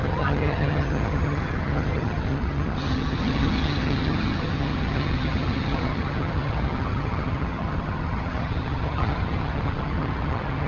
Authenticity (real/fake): fake